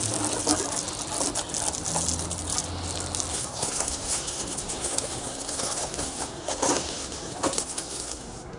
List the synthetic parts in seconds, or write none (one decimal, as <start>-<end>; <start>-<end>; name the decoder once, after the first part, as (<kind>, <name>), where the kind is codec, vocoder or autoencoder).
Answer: 3.3-8.6 (codec, SNAC)